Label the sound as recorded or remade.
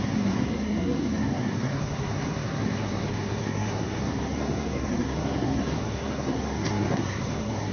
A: remade